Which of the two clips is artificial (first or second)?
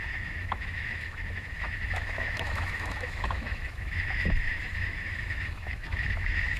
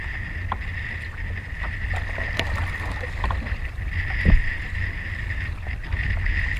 first